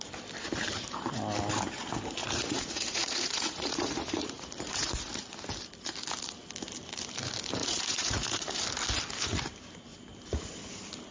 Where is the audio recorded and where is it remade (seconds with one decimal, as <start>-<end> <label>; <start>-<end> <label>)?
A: 0.0-2.2 recorded; 2.2-4.9 remade; 4.9-7.6 recorded; 7.6-8.5 remade; 8.5-11.1 recorded